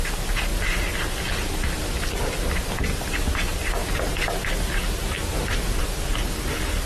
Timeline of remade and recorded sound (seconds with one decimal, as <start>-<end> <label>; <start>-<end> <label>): 0.0-6.9 recorded